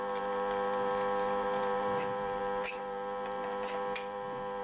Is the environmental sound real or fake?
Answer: fake